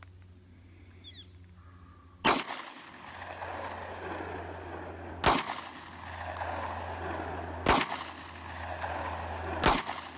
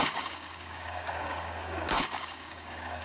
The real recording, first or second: first